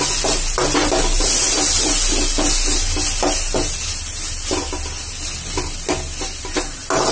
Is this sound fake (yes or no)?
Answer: no